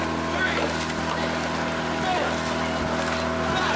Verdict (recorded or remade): recorded